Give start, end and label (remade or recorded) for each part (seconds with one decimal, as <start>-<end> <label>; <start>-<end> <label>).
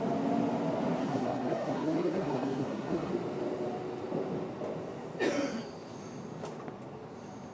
0.0-1.0 recorded; 1.0-3.1 remade; 3.1-7.5 recorded